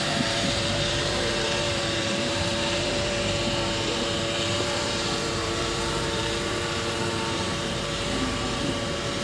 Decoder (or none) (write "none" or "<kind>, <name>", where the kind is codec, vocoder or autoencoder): vocoder, BigVGAN v2